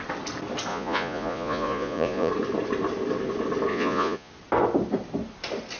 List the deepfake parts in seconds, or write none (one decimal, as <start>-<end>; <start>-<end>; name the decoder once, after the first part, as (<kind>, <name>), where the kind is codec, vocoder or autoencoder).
0.7-2.3 (vocoder, Vocos); 3.7-4.3